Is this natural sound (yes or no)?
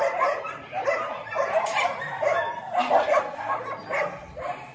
yes